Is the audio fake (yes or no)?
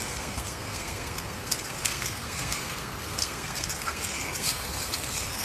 yes